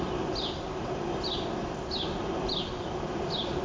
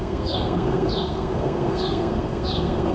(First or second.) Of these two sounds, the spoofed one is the second